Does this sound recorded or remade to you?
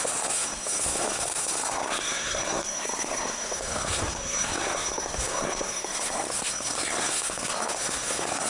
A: remade